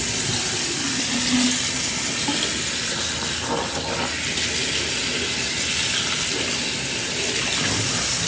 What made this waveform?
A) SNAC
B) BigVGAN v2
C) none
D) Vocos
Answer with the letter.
C